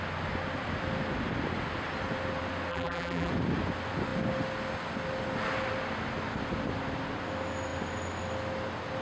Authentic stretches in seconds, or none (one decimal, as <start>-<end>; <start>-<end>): 0.0-2.7; 3.3-9.0